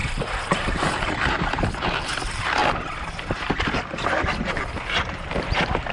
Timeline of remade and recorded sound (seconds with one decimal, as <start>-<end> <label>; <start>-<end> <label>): 0.0-2.6 remade; 2.6-4.5 recorded; 4.5-5.9 remade